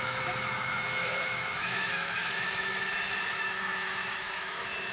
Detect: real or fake fake